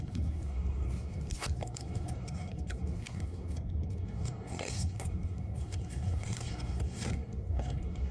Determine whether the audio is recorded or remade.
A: remade